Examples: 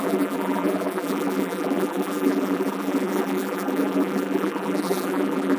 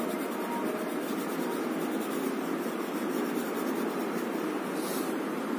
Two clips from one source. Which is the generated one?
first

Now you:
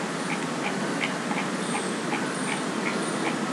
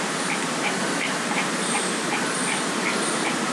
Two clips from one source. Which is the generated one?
second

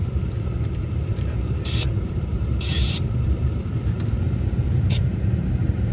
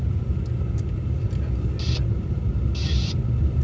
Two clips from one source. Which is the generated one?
first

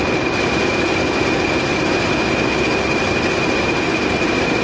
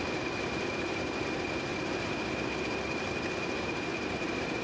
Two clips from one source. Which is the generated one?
second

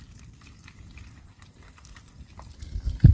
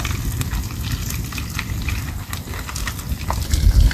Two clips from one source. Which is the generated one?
first